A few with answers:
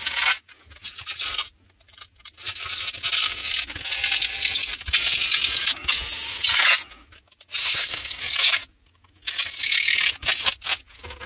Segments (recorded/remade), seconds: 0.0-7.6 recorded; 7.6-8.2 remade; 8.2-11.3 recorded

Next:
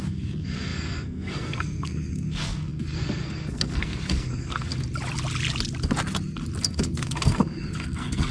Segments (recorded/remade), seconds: 0.0-4.7 remade; 4.7-6.6 recorded; 6.6-8.3 remade

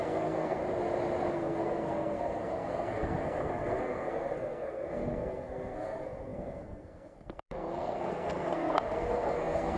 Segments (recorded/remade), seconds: 0.0-0.6 remade; 0.6-1.3 recorded; 1.3-9.8 remade

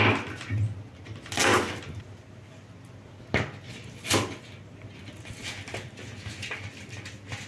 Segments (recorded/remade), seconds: 0.0-7.5 recorded